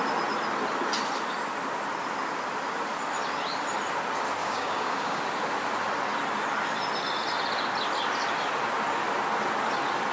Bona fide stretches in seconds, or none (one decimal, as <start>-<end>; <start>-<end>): 0.0-4.4; 5.2-10.1